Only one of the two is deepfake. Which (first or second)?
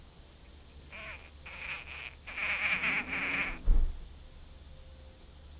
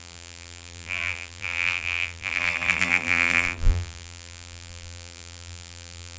second